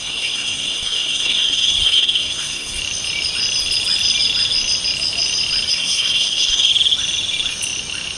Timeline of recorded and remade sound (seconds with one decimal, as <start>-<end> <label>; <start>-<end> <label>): 0.0-2.8 remade; 2.8-5.7 recorded; 5.7-6.7 remade; 6.7-8.2 recorded